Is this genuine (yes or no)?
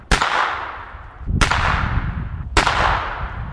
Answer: yes